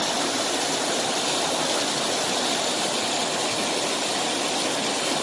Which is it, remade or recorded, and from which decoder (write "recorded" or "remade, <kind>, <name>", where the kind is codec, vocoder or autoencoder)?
recorded